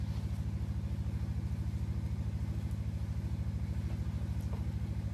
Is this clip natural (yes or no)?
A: yes